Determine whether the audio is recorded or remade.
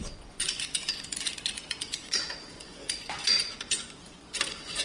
remade